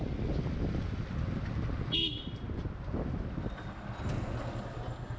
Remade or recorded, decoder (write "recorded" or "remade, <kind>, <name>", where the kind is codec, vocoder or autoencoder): recorded